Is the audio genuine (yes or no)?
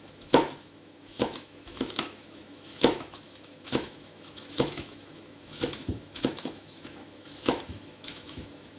no